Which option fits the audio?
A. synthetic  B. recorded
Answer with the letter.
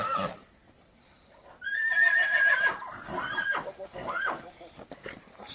A